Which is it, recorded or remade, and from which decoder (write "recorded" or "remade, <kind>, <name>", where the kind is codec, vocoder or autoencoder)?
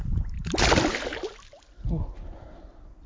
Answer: recorded